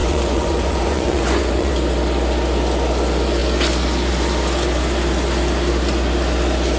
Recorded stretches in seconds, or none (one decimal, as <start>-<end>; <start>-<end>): 1.7-6.8